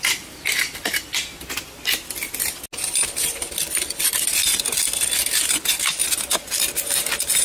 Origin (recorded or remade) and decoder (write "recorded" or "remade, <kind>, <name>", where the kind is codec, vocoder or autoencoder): recorded